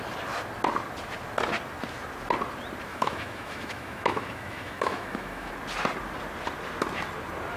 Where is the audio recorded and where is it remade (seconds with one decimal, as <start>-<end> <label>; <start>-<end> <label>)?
0.0-2.9 recorded; 2.9-5.5 remade; 5.5-7.6 recorded